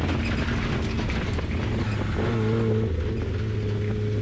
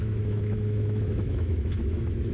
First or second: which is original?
first